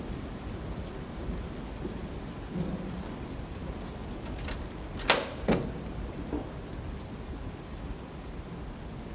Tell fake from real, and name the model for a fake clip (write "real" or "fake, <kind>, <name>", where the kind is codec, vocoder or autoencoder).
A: real